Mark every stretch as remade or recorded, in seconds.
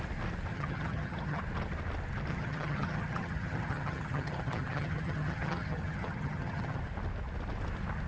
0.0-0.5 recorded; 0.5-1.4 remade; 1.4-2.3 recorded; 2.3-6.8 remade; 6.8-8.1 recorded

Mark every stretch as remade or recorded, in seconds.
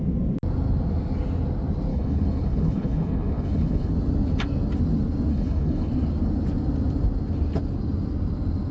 0.0-1.9 recorded; 1.9-3.9 remade; 3.9-5.3 recorded; 5.3-5.9 remade; 5.9-8.7 recorded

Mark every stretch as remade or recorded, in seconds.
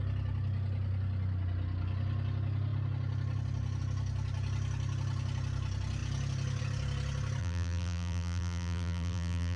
0.0-7.4 recorded; 7.4-9.6 remade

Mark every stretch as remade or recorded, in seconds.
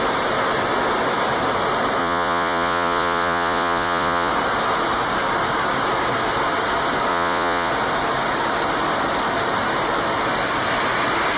0.0-2.0 recorded; 2.0-4.3 remade; 4.3-7.1 recorded; 7.1-7.7 remade; 7.7-11.4 recorded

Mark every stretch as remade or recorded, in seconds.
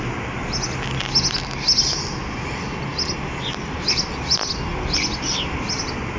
0.0-6.2 recorded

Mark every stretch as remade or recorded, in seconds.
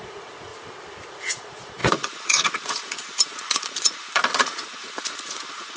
0.0-0.5 remade; 0.5-1.1 recorded; 1.1-5.8 remade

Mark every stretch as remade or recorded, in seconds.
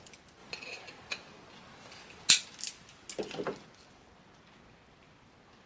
0.0-5.7 recorded